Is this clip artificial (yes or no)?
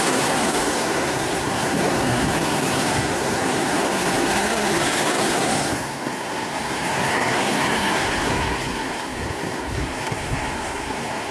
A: yes